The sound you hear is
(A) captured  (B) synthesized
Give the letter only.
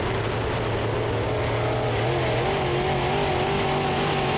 A